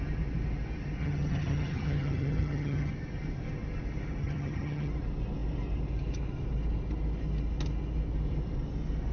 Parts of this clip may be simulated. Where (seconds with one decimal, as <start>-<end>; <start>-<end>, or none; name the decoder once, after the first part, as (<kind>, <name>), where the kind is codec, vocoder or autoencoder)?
1.0-2.9 (vocoder, HiFi-GAN); 4.2-4.9